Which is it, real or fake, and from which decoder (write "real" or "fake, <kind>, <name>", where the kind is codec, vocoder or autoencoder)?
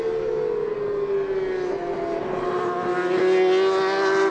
real